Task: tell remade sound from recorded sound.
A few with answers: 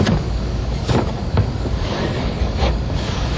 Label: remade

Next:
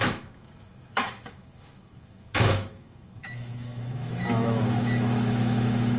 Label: remade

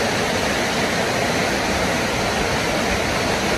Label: recorded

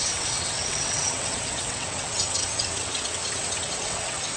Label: remade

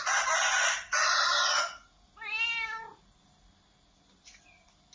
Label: recorded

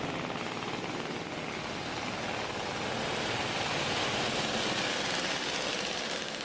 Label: recorded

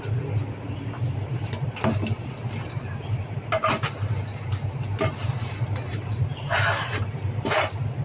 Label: remade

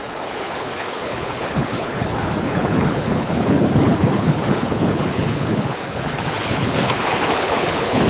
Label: remade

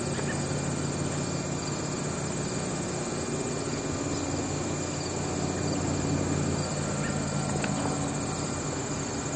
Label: recorded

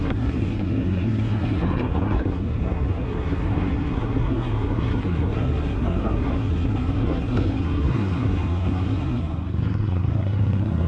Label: remade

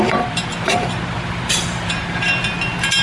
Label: remade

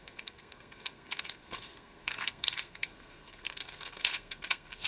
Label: remade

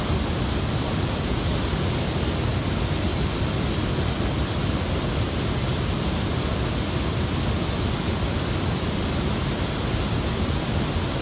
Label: recorded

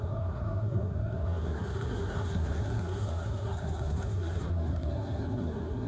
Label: remade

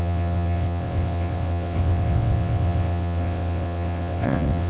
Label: remade